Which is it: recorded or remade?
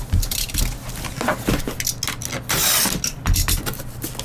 recorded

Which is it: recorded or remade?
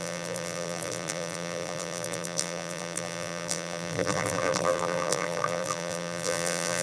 remade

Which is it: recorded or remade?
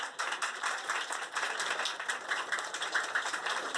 remade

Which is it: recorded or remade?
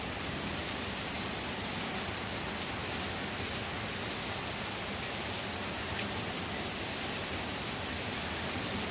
recorded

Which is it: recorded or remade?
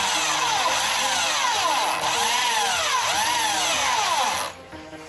recorded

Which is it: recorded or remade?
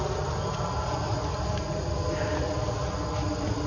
recorded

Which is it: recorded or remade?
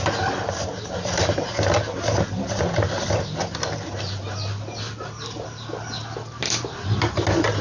recorded